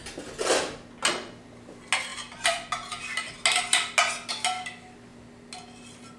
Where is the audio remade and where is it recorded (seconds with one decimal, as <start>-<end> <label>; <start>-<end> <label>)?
0.0-6.2 recorded